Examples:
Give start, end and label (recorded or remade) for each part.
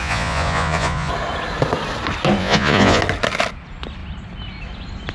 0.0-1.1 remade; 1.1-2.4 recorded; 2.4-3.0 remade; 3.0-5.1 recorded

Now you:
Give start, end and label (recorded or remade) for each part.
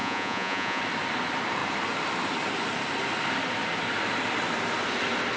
0.0-0.8 remade; 0.8-5.4 recorded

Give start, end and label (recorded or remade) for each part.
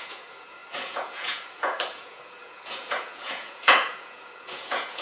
0.0-5.0 remade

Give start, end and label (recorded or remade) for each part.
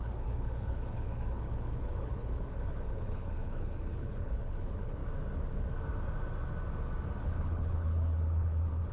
0.0-5.0 remade; 5.0-7.2 recorded; 7.2-8.9 remade